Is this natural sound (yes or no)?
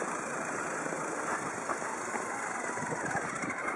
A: no